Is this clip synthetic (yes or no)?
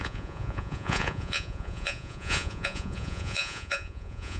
yes